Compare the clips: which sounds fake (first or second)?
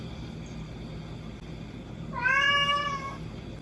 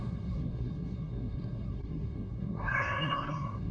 second